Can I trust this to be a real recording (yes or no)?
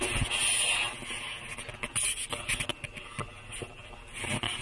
yes